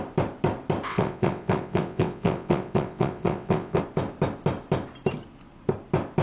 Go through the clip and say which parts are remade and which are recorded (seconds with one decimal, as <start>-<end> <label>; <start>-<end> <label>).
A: 0.0-0.9 recorded; 0.9-3.8 remade; 3.8-6.2 recorded